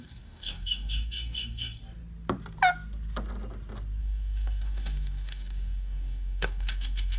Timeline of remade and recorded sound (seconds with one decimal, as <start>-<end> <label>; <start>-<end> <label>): 0.0-1.8 remade; 1.8-4.0 recorded; 4.0-7.2 remade